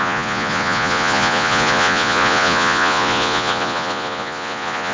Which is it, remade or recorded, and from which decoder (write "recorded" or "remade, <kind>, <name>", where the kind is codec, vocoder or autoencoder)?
remade, vocoder, Vocos